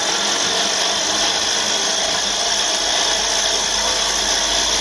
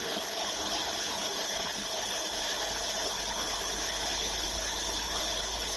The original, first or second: first